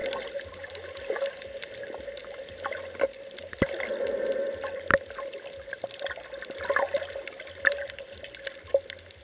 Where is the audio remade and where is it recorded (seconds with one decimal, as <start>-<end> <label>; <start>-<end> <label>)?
0.0-9.2 recorded